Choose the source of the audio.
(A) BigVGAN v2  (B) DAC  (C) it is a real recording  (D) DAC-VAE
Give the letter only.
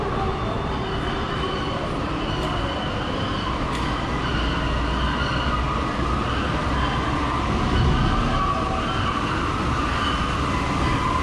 C